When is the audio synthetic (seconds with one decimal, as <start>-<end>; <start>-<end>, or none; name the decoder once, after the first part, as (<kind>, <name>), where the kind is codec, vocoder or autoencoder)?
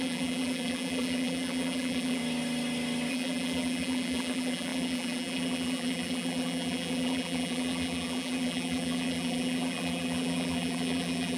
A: 0.0-2.2 (vocoder, BigVGAN v2); 3.1-11.4